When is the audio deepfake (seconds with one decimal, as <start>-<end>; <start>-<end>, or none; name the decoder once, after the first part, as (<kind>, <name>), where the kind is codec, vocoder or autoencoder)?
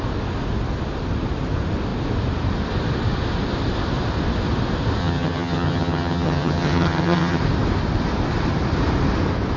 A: 5.0-7.4 (vocoder, HiFi-GAN)